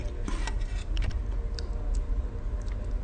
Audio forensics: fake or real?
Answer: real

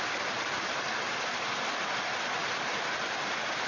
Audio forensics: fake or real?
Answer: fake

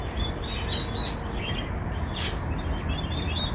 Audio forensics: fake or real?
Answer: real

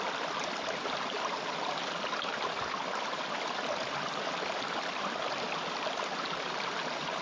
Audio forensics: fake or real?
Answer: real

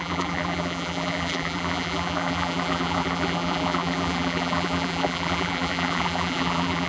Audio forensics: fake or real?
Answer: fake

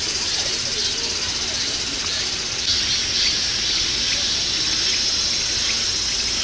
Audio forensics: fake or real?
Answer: real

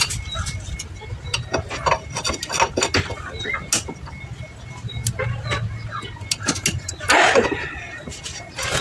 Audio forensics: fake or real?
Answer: real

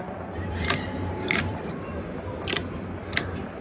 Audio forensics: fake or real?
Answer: fake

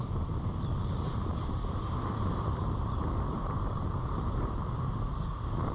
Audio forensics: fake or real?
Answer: fake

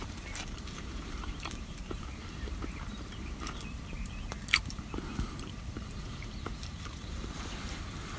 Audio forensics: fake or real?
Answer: fake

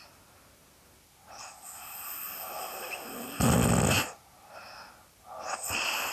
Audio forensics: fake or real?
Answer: real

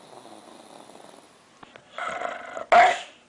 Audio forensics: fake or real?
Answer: real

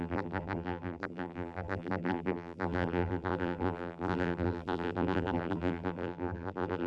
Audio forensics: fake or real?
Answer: fake